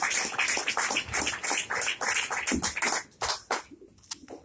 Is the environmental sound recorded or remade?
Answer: recorded